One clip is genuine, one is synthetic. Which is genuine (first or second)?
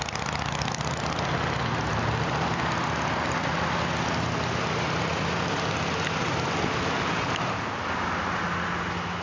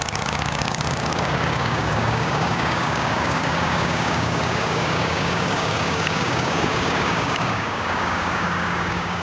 first